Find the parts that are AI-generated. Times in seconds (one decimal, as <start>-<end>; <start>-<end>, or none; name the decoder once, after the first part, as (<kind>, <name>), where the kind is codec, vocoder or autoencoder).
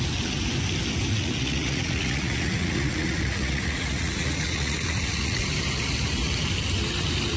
1.1-5.4 (vocoder, Vocos)